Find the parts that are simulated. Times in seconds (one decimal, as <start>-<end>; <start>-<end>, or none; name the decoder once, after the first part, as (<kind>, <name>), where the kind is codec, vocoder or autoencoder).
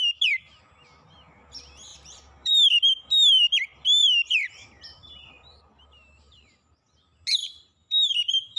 1.9-6.7 (vocoder, BigVGAN v2); 7.4-8.6